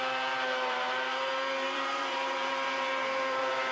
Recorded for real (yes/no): no